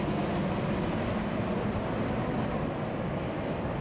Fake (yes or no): no